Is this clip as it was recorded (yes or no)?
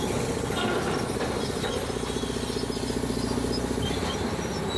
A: yes